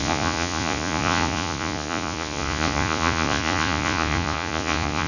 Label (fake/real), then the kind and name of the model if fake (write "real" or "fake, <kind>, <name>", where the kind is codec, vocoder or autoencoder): fake, vocoder, Vocos